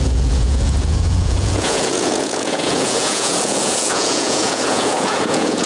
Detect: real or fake fake